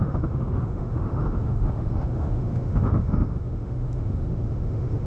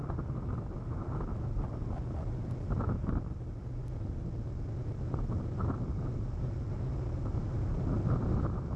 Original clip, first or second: second